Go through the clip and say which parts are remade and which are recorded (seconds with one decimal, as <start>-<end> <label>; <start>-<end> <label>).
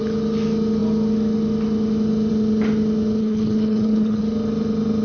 0.0-3.2 recorded; 3.2-4.2 remade; 4.2-5.0 recorded